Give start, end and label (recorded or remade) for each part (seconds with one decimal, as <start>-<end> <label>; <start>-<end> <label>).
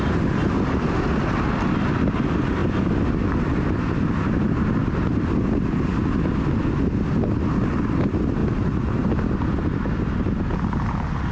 0.0-11.3 recorded